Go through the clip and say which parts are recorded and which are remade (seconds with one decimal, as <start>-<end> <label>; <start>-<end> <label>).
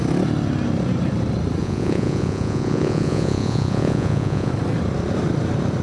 0.0-1.6 recorded; 1.6-4.5 remade; 4.5-5.8 recorded